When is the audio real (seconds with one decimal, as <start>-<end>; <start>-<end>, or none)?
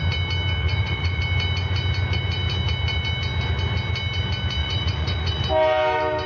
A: 0.0-0.6; 1.2-4.6; 5.4-6.3